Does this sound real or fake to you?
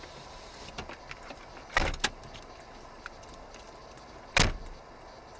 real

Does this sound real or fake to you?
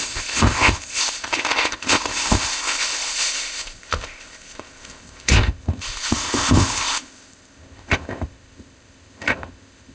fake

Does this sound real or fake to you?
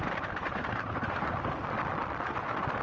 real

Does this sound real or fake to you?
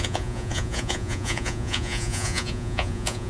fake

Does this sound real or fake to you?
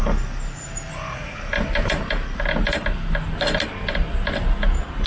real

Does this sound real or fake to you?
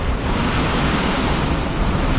real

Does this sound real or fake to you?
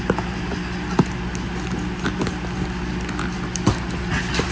real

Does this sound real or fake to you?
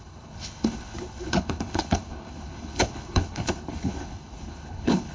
fake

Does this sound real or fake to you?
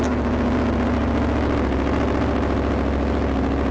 real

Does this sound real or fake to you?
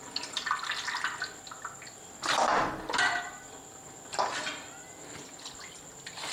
real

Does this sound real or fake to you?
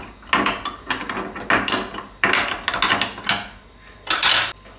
real